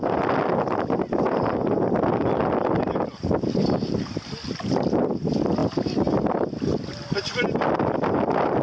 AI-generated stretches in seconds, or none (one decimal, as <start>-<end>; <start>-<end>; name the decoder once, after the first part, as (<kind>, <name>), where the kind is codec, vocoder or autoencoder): none